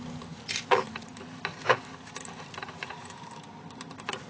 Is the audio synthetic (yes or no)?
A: no